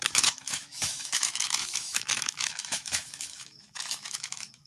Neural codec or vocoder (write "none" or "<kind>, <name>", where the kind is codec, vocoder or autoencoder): autoencoder, DAC-VAE